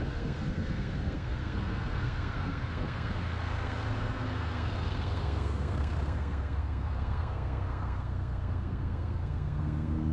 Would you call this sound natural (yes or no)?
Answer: no